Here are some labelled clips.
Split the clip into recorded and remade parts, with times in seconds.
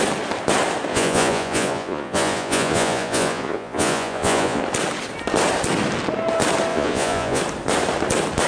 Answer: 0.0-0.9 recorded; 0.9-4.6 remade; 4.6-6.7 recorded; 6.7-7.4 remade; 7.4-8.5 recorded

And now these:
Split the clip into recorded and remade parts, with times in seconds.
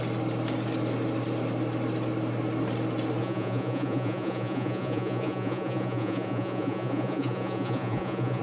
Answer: 0.0-3.2 recorded; 3.2-8.4 remade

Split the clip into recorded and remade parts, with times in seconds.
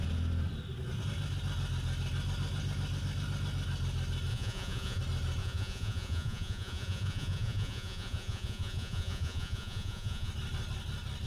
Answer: 0.0-4.3 recorded; 4.3-5.0 remade; 5.0-5.4 recorded; 5.4-10.3 remade; 10.3-11.3 recorded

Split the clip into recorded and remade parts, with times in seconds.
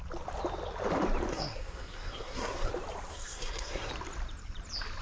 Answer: 0.0-1.3 recorded; 1.3-2.7 remade; 2.7-3.1 recorded; 3.1-3.9 remade; 3.9-5.0 recorded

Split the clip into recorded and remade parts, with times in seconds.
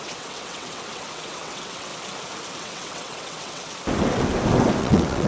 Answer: 0.0-1.9 remade; 1.9-2.6 recorded; 2.6-3.7 remade; 3.7-4.8 recorded; 4.8-5.3 remade